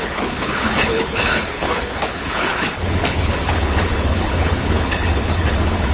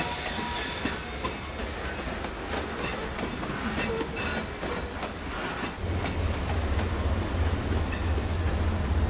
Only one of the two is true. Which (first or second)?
second